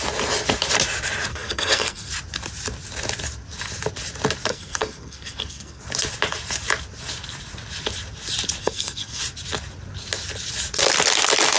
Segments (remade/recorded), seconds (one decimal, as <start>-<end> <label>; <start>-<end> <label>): 0.0-1.3 recorded; 1.3-2.1 remade; 2.1-4.5 recorded; 4.5-5.8 remade; 5.8-8.6 recorded; 8.6-9.2 remade; 9.2-11.6 recorded